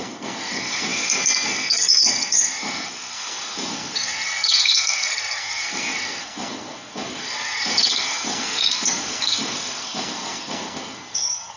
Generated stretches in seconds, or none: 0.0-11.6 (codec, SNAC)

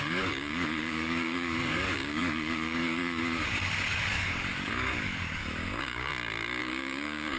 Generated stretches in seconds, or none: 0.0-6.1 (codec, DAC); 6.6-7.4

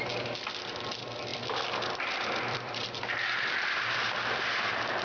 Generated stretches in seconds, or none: 1.3-4.0 (vocoder, BigVGAN v2)

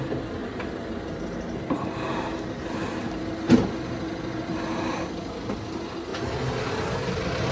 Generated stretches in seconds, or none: none

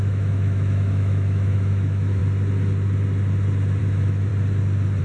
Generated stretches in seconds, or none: 0.0-2.2 (autoencoder, DAC-VAE); 3.8-4.3

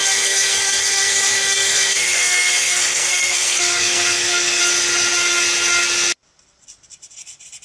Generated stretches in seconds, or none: 0.0-4.6 (codec, SNAC)